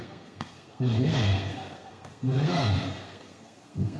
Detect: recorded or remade remade